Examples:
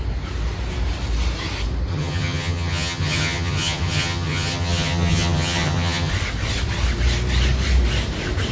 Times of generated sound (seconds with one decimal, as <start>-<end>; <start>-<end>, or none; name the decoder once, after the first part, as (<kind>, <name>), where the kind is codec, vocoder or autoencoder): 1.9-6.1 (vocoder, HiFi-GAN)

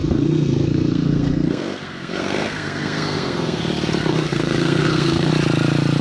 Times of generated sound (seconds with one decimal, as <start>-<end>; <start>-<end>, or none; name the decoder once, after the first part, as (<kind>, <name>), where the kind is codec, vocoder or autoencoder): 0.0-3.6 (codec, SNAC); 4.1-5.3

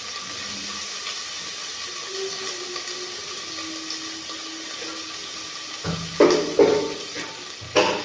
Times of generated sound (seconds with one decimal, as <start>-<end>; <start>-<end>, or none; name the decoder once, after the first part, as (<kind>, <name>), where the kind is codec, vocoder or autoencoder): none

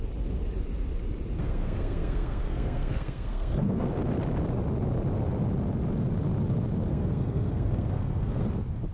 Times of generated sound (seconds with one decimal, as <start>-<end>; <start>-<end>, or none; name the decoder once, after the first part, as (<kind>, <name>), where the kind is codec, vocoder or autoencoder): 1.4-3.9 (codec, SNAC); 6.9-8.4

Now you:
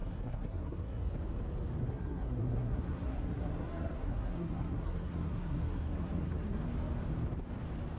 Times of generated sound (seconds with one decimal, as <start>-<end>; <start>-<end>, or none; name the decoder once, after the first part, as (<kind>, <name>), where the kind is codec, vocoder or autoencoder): 0.0-1.1 (codec, SNAC); 1.8-6.6

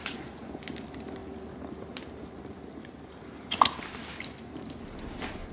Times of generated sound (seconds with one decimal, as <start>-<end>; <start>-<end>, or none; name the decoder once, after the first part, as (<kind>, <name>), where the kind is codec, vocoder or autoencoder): 0.0-0.6 (vocoder, Vocos)